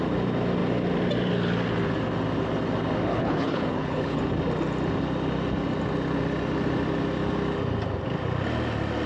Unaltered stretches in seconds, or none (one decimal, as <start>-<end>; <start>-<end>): 0.0-3.1; 4.2-9.1